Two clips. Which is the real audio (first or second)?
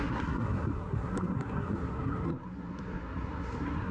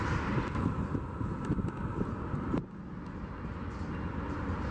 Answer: second